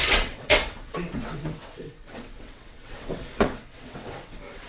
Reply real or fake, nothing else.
fake